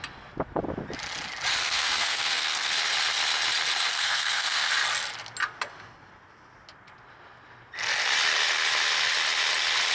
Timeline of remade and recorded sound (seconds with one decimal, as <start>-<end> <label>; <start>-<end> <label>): 0.0-1.6 recorded; 1.6-2.7 remade; 2.7-3.9 recorded; 3.9-4.7 remade; 4.7-9.9 recorded